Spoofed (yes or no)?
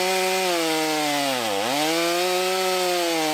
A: no